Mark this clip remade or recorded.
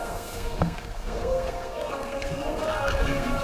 remade